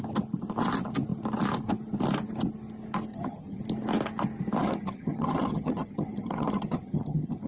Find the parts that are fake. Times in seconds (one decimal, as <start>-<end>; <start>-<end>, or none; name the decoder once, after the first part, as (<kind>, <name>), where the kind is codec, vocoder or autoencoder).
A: 3.1-3.6 (vocoder, HiFi-GAN); 4.6-7.5